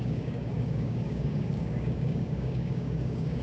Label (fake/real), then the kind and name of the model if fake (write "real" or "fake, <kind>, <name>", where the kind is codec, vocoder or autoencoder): fake, codec, DAC